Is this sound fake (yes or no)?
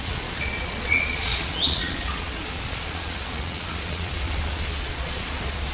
yes